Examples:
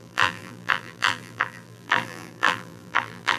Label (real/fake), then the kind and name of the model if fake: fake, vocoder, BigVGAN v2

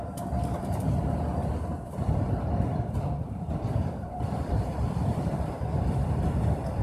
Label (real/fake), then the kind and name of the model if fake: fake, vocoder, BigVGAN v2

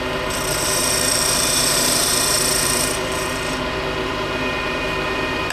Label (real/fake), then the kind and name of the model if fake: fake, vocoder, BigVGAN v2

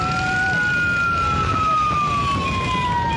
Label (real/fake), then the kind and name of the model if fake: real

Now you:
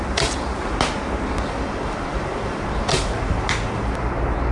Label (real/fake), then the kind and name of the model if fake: real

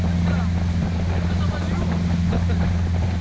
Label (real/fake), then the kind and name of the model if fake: real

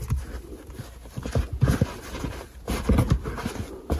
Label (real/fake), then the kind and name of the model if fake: real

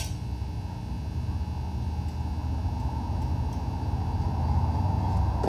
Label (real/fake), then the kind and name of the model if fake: real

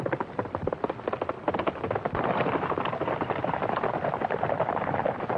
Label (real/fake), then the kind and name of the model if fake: real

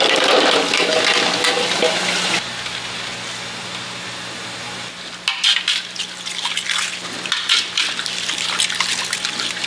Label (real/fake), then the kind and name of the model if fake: real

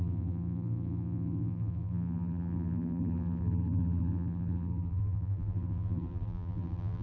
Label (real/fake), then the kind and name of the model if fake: fake, vocoder, BigVGAN v2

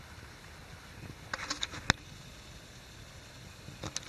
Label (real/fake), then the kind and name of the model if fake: real